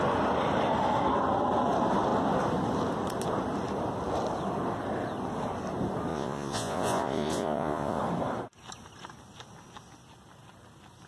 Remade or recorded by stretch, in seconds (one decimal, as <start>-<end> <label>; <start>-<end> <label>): 0.0-6.1 recorded; 6.1-8.0 remade; 8.0-11.1 recorded